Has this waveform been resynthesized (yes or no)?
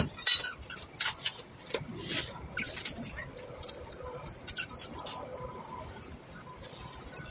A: no